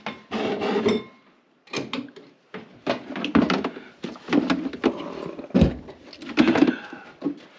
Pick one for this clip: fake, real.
real